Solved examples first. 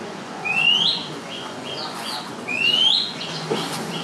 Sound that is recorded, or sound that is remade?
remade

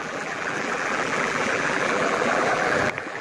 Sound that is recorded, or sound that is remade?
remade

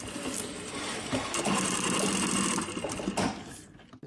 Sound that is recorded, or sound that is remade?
recorded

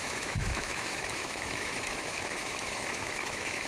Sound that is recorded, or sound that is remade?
remade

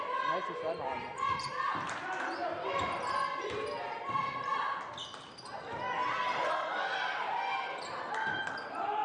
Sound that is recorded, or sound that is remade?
recorded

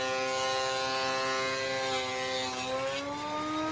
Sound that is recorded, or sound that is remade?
recorded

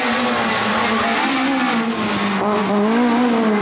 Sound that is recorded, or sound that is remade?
recorded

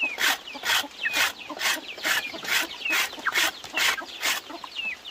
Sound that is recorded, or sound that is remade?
recorded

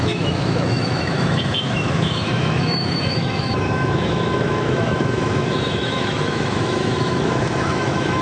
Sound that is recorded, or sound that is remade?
remade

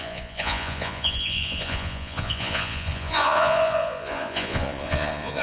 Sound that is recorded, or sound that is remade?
remade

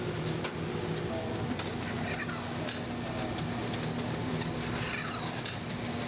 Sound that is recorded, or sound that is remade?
recorded